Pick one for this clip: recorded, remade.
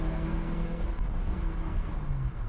remade